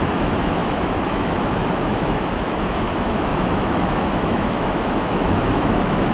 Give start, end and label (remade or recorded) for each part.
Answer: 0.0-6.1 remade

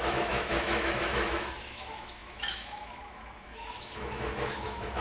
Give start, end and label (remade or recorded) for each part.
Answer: 0.0-5.0 remade

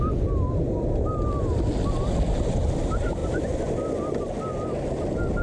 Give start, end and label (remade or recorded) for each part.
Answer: 0.0-5.4 recorded

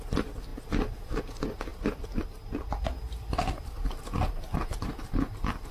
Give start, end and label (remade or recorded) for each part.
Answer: 0.0-5.7 recorded

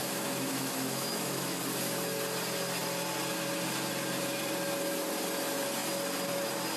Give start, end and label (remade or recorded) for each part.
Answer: 0.0-1.6 remade; 1.6-6.8 recorded

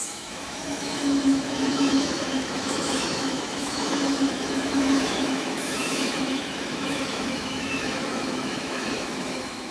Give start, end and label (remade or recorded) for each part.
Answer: 0.0-9.7 remade